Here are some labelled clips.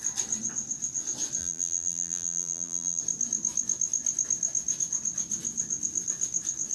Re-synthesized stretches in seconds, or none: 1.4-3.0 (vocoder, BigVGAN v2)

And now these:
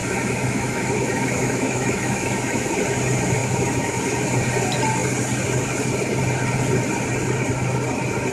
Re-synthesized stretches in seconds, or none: 0.0-2.7 (autoencoder, DAC-VAE); 3.4-4.0

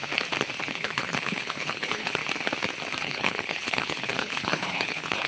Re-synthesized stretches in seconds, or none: 0.6-2.2 (codec, HILCodec); 3.0-5.3

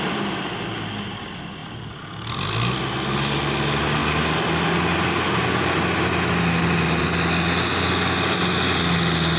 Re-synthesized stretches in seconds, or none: none